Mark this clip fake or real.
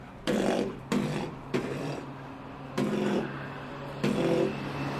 fake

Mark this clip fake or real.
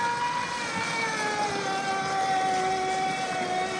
fake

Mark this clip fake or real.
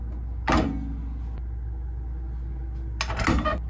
real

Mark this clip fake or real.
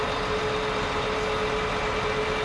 real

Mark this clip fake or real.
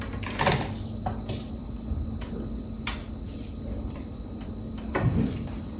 real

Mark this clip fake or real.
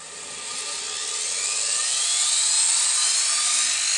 real